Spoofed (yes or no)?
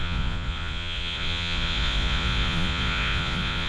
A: yes